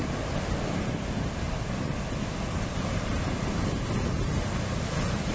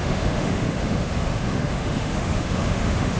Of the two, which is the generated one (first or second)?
second